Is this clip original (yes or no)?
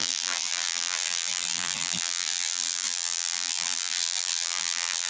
no